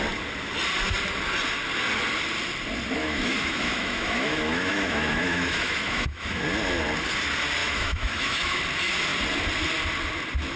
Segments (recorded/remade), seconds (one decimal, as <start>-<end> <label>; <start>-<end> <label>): 0.0-3.0 recorded; 3.0-6.4 remade; 6.4-7.6 recorded; 7.6-8.6 remade; 8.6-10.6 recorded